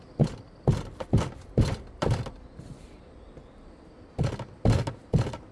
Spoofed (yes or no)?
no